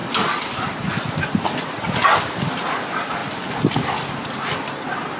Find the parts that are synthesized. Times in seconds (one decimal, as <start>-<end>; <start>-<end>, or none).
none